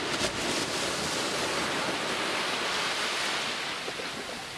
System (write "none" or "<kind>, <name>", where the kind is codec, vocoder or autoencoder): none